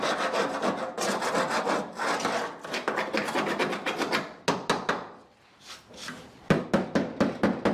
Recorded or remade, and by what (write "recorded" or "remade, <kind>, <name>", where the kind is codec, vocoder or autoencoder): recorded